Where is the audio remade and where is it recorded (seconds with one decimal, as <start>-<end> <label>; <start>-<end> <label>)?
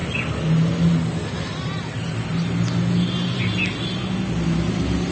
0.0-5.1 recorded